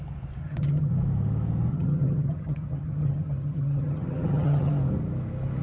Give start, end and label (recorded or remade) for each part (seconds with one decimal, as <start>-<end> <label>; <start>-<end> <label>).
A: 0.0-0.4 recorded; 0.4-0.9 remade; 0.9-1.7 recorded; 1.7-4.7 remade; 4.7-5.6 recorded